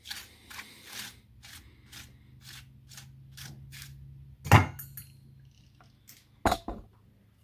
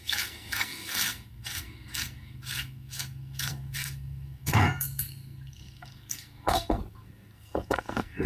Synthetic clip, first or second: second